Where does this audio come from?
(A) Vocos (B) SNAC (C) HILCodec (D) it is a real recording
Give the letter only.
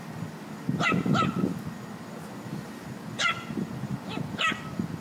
D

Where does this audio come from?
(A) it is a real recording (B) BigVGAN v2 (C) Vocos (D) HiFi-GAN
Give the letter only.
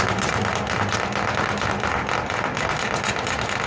A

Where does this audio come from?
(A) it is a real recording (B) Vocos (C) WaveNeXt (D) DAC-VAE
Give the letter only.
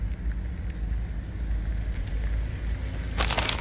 A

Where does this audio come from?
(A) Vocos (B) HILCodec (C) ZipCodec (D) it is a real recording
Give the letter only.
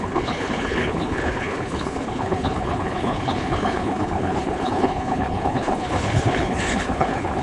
B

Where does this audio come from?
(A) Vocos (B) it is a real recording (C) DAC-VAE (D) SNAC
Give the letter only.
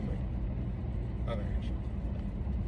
B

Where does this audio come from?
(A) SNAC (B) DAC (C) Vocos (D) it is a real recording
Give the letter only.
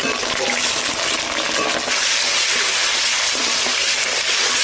D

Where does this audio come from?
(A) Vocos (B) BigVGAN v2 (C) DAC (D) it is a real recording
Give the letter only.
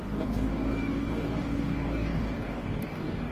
C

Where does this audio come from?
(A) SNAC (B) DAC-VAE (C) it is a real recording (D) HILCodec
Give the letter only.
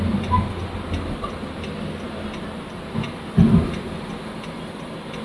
C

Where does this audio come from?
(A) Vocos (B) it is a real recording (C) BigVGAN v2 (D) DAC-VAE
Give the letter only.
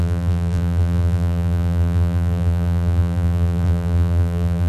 C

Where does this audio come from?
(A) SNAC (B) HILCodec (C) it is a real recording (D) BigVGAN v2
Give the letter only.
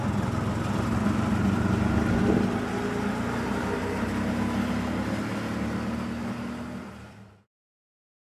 C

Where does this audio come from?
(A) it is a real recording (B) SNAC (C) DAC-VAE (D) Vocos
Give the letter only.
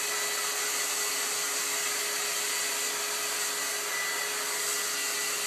A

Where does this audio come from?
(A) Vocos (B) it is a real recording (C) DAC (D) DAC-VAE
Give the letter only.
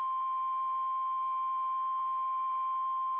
B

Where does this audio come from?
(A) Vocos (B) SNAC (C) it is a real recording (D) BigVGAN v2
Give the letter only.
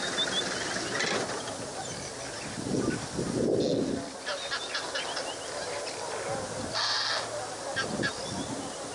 C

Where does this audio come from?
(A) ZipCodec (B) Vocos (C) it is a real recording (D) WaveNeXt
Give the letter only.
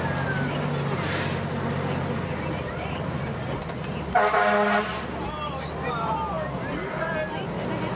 C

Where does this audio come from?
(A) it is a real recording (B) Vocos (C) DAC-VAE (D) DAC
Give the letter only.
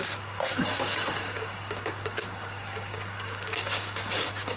D